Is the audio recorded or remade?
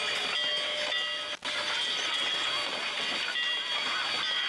recorded